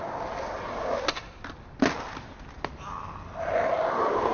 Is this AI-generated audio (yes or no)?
no